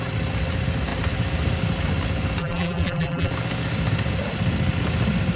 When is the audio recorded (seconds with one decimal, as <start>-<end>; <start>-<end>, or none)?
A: 0.0-2.4; 3.3-5.4

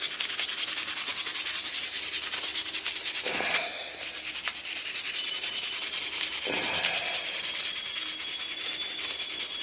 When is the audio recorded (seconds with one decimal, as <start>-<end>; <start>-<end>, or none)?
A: 2.5-3.3

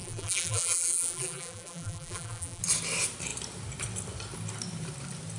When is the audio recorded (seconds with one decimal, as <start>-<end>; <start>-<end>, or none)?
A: 2.6-5.4

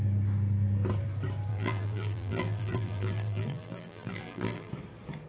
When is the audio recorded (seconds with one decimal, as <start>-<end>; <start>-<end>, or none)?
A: 0.0-1.5; 4.7-5.3

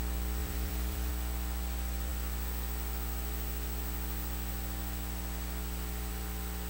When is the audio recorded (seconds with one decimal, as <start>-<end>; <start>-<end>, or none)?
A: 0.0-0.4; 1.1-6.7

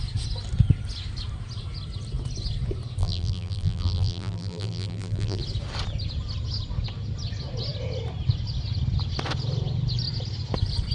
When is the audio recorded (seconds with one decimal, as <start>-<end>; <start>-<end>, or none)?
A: 0.0-3.0; 5.4-10.9

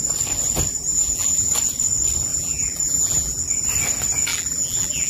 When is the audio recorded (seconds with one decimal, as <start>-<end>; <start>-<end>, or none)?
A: 0.0-0.7; 1.5-2.3; 3.4-4.3